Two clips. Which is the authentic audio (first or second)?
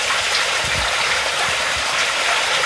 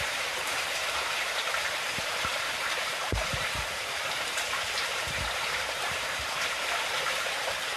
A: first